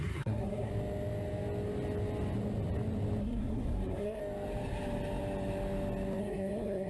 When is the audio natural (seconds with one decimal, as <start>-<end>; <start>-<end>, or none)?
0.7-3.2; 4.2-6.2